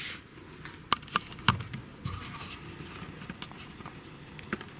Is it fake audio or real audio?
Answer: real